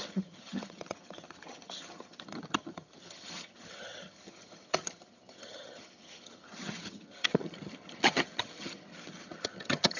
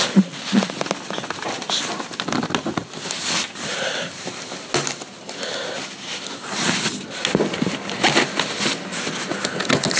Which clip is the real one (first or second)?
second